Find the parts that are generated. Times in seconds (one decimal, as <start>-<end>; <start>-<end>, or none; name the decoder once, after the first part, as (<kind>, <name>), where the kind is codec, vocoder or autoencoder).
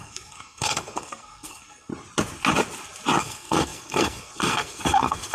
0.0-1.9 (codec, SNAC); 3.2-5.3